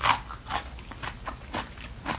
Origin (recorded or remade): recorded